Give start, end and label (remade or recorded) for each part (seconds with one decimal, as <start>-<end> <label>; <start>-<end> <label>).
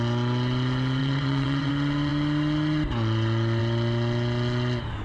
0.0-1.0 recorded; 1.0-1.7 remade; 1.7-5.0 recorded